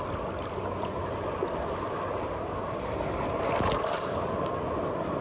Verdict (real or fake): real